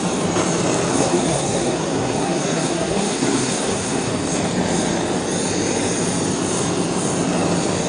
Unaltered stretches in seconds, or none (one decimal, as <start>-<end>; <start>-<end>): 0.0-0.9; 4.1-7.9